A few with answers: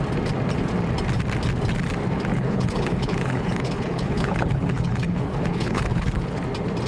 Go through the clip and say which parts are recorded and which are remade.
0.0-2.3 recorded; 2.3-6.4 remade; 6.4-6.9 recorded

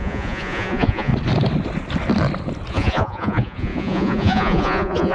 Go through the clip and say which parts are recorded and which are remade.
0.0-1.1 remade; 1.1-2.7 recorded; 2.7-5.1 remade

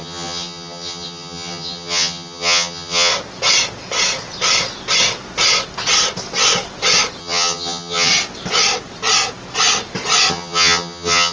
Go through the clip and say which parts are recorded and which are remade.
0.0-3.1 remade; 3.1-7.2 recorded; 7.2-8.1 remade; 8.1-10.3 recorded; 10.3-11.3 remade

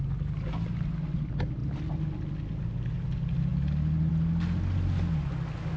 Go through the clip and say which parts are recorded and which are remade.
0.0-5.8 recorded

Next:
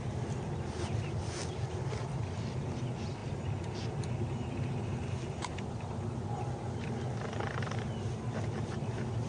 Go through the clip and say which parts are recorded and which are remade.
0.0-9.3 recorded

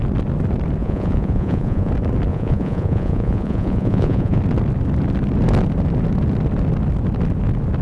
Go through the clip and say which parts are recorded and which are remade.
0.0-0.8 recorded; 0.8-1.9 remade; 1.9-2.3 recorded; 2.3-4.4 remade; 4.4-7.8 recorded